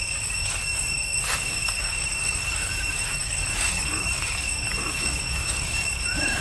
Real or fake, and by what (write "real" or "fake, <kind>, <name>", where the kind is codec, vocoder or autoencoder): fake, codec, DAC